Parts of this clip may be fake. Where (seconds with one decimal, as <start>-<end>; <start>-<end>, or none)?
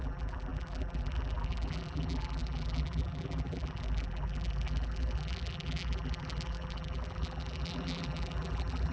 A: 0.0-8.9